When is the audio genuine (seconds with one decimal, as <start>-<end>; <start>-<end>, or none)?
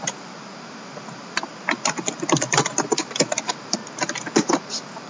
1.5-2.9; 3.8-4.6